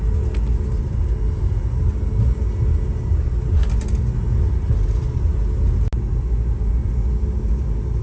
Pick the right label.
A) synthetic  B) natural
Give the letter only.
B